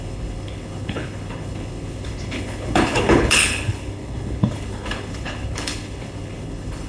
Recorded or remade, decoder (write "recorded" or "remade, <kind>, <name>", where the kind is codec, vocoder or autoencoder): remade, codec, HILCodec